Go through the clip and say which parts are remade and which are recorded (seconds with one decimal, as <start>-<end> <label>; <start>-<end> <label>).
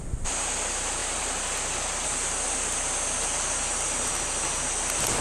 0.0-5.2 recorded